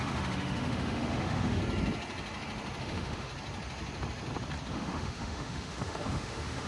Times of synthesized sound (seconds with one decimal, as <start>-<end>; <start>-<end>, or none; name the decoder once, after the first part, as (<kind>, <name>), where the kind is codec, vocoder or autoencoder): 0.0-1.6 (autoencoder, DAC-VAE); 2.8-3.3; 4.7-6.7